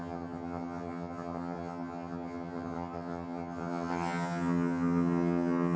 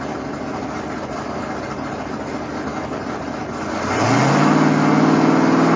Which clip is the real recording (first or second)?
second